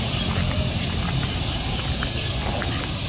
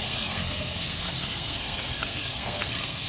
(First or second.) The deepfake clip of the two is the second